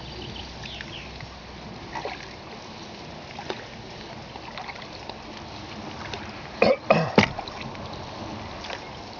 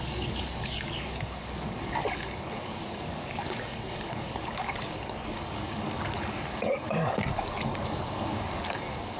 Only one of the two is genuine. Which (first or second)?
first